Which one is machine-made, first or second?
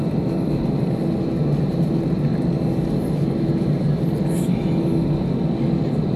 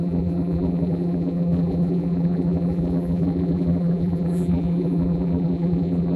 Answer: second